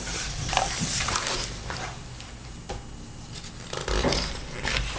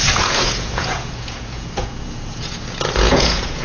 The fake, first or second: second